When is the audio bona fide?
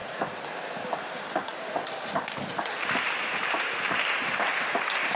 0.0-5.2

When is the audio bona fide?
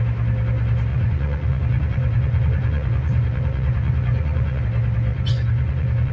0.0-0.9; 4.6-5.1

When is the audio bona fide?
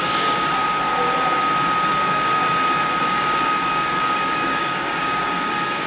0.7-2.0; 2.4-3.0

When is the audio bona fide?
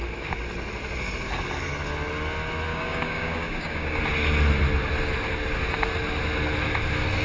0.0-2.7; 4.0-7.2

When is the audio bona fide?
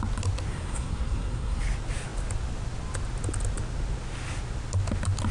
0.0-0.5; 1.6-5.3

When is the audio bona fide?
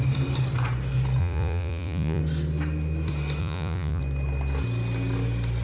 0.0-1.2; 2.2-3.4; 4.0-5.6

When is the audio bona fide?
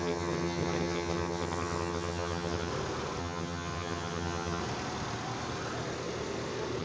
2.7-3.2; 4.6-6.8